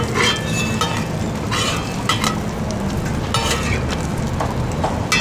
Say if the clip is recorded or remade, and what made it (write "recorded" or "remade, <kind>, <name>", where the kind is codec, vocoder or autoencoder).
recorded